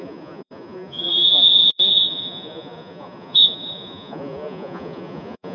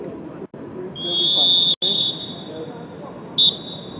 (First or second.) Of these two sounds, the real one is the second